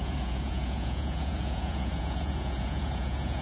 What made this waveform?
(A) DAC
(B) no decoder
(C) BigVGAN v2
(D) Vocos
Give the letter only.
D